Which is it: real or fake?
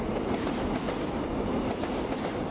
real